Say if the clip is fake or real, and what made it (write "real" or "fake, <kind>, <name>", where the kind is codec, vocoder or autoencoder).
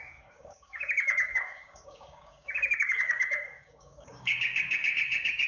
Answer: fake, codec, DAC